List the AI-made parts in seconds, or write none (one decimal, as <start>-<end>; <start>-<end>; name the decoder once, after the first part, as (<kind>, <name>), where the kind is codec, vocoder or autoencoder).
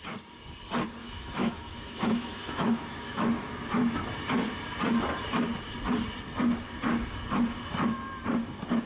1.0-3.7 (autoencoder, DAC-VAE)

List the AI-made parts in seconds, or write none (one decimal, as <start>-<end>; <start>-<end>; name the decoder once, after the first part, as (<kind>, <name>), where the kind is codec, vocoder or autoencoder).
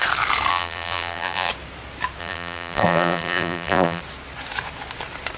0.5-1.5 (vocoder, BigVGAN v2); 2.2-4.0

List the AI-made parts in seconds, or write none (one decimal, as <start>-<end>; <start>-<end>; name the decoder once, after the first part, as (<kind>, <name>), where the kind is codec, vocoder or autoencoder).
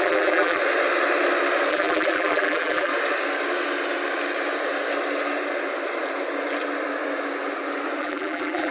0.0-0.6 (vocoder, BigVGAN v2); 1.7-2.9; 8.0-8.7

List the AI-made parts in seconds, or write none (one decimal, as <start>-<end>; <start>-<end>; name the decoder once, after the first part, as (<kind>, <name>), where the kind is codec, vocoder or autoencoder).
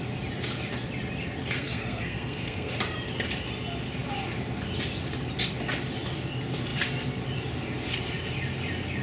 1.4-2.7 (codec, SNAC)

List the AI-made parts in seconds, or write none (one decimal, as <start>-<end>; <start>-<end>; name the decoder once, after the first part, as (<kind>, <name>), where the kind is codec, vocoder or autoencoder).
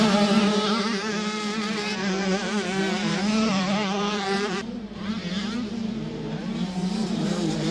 0.0-7.7 (vocoder, BigVGAN v2)